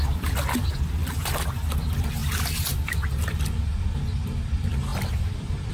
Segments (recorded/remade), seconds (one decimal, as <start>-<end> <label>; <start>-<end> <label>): 0.0-5.7 recorded